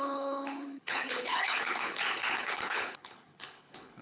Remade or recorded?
remade